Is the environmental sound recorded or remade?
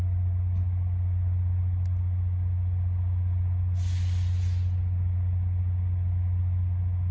recorded